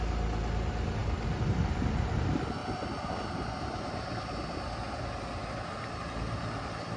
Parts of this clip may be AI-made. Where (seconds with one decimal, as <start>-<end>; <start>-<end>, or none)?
none